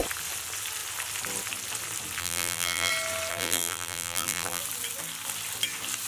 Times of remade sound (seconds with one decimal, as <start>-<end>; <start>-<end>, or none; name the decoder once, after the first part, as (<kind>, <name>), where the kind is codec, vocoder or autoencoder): 2.2-2.9 (vocoder, BigVGAN v2); 3.3-4.6

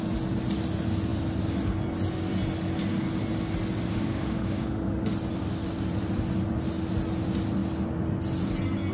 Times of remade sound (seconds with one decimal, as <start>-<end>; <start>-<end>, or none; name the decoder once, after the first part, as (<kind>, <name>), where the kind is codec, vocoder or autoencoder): 3.9-5.1 (autoencoder, DAC-VAE)

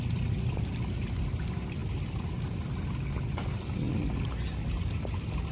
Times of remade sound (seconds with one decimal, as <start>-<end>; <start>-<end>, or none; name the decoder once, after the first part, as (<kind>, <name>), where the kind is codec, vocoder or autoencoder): none

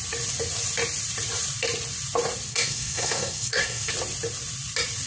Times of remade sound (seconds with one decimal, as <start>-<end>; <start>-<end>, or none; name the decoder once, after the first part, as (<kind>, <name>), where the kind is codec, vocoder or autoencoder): 2.5-3.9 (codec, SNAC)

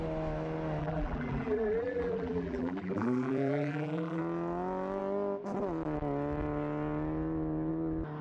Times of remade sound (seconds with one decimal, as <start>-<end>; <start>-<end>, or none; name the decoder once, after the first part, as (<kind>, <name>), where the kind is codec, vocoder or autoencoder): 0.8-4.2 (vocoder, BigVGAN v2)

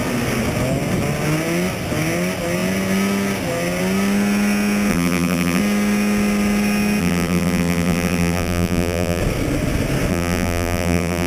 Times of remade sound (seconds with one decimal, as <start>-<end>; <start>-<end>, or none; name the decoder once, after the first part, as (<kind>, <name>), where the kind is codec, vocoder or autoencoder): 4.9-5.6 (vocoder, BigVGAN v2); 7.0-9.2; 10.1-11.3

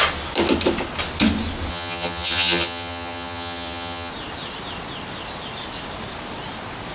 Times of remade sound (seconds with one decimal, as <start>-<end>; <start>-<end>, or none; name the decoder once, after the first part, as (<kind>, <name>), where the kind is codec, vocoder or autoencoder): 1.7-4.1 (vocoder, HiFi-GAN)